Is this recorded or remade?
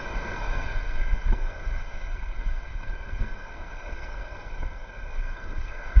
remade